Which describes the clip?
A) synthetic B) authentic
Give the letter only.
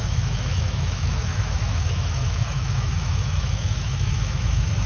A